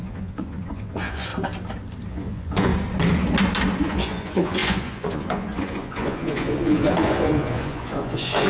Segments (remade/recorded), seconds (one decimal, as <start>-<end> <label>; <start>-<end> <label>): 0.0-1.3 remade; 1.3-2.1 recorded; 2.1-2.7 remade; 2.7-3.8 recorded; 3.8-8.5 remade